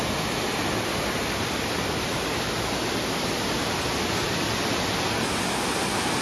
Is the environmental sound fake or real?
real